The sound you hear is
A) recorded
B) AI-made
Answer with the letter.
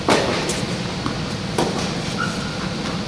A